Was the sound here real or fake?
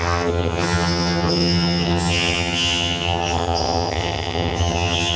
fake